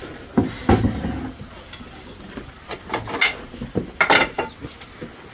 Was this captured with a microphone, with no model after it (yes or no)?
yes